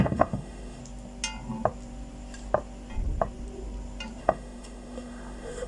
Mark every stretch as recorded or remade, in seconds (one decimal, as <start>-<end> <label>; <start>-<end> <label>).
0.0-0.8 remade; 0.8-4.2 recorded; 4.2-5.7 remade